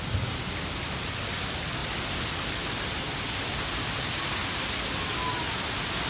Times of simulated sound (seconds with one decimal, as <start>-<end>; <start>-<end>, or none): none